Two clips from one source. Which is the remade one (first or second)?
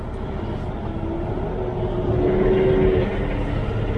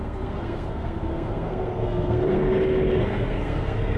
second